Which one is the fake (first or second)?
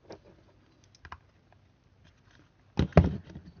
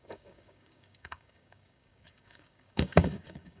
second